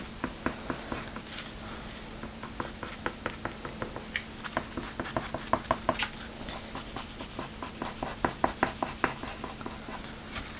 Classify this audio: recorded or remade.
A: recorded